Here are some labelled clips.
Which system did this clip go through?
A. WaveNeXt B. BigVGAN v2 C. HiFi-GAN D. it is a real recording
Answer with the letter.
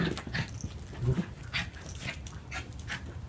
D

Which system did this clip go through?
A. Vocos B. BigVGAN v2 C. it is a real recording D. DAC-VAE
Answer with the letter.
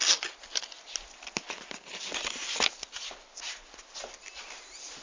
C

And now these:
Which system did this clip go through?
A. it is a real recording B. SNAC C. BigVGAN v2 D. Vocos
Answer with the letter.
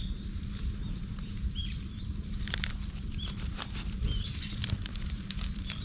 C